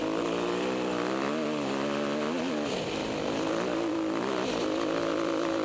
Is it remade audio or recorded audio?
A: recorded